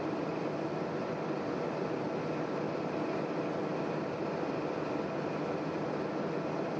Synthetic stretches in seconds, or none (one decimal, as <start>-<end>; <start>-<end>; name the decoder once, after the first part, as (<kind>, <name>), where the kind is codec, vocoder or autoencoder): none